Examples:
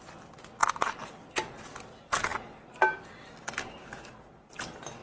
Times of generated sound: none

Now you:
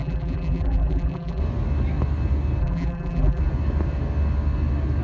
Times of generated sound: 0.0-1.4 (vocoder, BigVGAN v2); 2.6-3.4

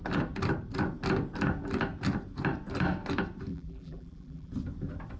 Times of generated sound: 3.5-4.5 (vocoder, BigVGAN v2)

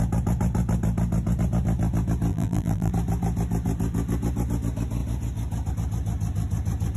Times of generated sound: 2.3-2.9 (vocoder, BigVGAN v2)

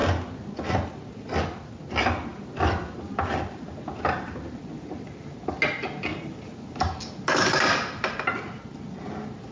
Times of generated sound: 6.1-6.8 (vocoder, BigVGAN v2)

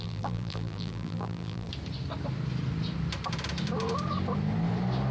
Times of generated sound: 0.0-1.7 (vocoder, BigVGAN v2)

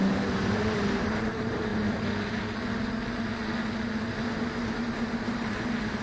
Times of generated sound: 0.0-1.7 (vocoder, BigVGAN v2); 5.3-6.0

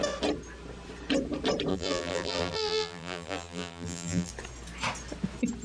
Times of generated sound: 1.7-4.3 (vocoder, BigVGAN v2)